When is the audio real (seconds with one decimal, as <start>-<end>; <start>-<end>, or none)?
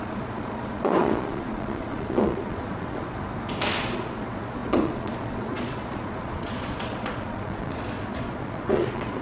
3.2-3.8